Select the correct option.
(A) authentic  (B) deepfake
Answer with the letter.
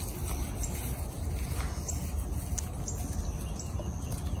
A